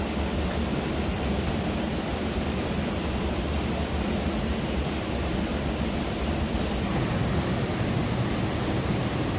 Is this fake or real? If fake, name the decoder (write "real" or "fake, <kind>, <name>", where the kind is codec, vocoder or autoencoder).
real